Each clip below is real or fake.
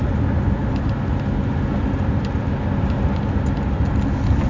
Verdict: real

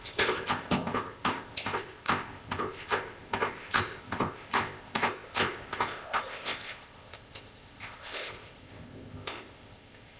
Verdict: fake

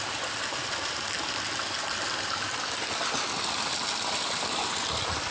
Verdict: real